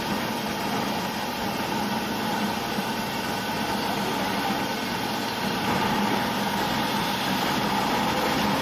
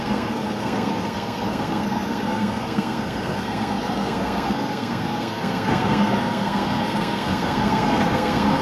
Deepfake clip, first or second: second